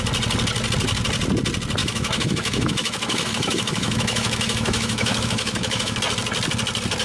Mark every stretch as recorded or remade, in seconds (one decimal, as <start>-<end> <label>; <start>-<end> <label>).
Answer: 0.0-1.8 recorded; 1.8-6.0 remade; 6.0-7.0 recorded